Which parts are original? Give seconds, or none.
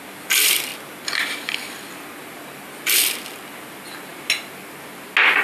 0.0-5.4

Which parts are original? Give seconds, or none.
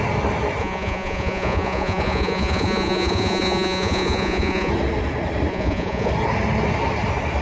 0.0-0.6; 4.7-5.5; 6.1-7.4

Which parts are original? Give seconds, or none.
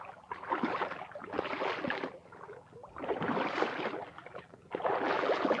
2.8-3.9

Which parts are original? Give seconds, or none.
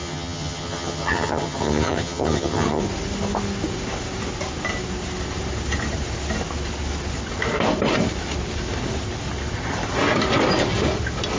2.8-11.4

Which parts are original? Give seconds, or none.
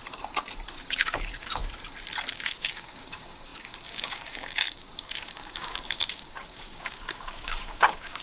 0.0-0.7; 1.6-2.3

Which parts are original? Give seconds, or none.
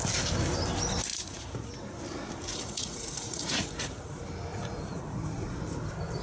0.0-1.1; 1.7-2.5; 4.1-4.5; 5.6-6.2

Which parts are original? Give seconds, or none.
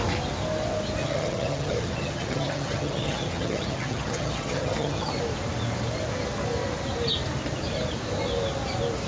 0.0-1.0; 5.1-9.1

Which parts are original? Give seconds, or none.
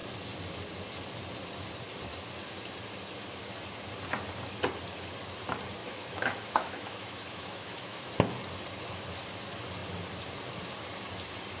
0.0-5.8; 8.1-11.6